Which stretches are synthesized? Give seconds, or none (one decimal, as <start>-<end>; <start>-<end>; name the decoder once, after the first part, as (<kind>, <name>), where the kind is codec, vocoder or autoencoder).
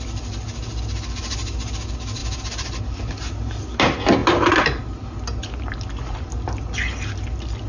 none